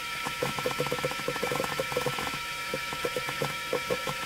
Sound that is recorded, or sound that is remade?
remade